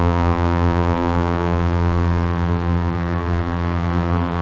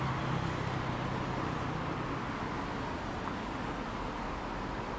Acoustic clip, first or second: second